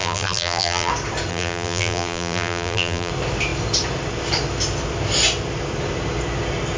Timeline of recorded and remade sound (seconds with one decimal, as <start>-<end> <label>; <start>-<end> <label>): 0.0-0.9 remade; 0.9-1.3 recorded; 1.3-3.1 remade; 3.1-6.8 recorded